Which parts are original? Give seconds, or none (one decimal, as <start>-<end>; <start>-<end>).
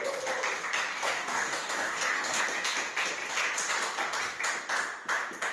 0.0-0.9; 2.4-5.5